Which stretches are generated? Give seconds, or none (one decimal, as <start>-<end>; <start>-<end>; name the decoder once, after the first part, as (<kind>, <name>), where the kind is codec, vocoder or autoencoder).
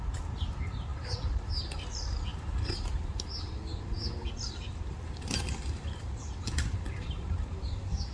none